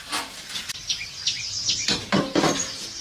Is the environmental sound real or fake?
fake